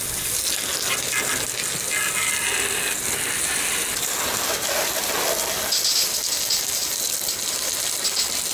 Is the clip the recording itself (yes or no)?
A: yes